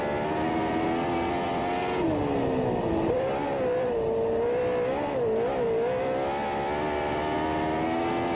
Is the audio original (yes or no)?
yes